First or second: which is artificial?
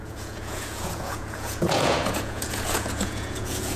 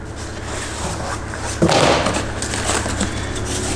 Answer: first